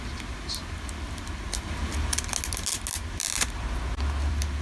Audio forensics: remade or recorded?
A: recorded